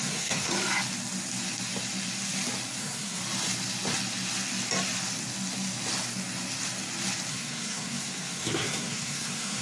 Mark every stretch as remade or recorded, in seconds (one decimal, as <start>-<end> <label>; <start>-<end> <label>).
0.0-0.5 remade; 0.5-2.8 recorded; 2.8-3.2 remade; 3.2-7.3 recorded; 7.3-9.6 remade